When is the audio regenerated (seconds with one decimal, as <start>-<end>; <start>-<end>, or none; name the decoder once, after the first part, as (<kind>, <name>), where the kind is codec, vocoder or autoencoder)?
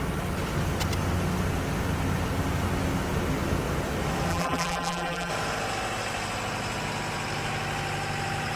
4.3-5.3 (vocoder, BigVGAN v2)